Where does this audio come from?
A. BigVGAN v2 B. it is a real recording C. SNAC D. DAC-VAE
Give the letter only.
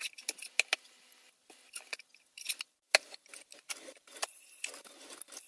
B